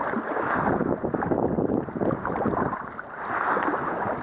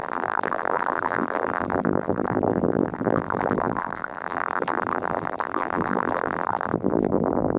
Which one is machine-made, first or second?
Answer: second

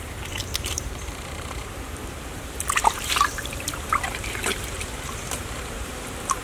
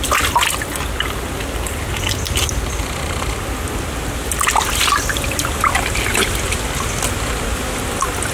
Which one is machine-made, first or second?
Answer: first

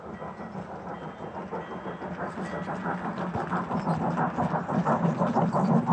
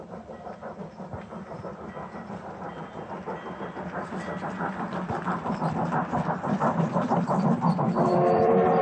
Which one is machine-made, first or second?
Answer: second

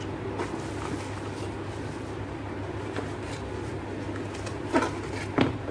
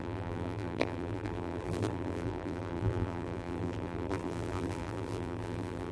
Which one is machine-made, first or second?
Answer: second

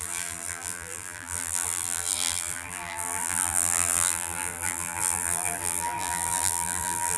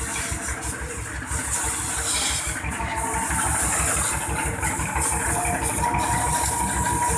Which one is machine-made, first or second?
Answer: first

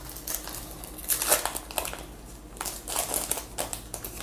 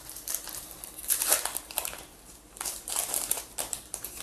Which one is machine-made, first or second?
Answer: second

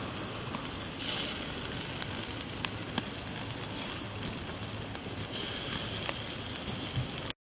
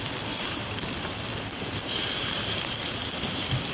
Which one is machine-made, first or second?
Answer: second